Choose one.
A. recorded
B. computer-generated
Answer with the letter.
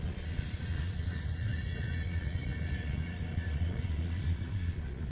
B